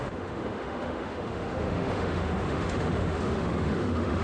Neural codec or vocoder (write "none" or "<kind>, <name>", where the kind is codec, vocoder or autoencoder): autoencoder, DAC-VAE